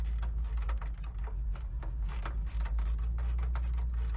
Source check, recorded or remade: recorded